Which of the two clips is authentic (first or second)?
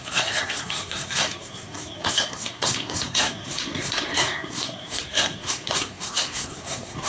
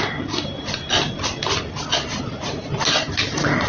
second